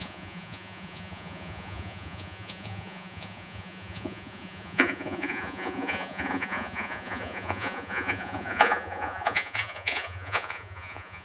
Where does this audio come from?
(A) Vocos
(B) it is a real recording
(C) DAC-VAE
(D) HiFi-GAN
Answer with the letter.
A